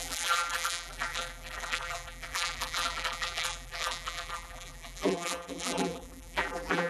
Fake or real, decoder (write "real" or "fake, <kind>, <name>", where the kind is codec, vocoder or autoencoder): fake, vocoder, BigVGAN v2